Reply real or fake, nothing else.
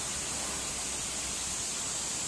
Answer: real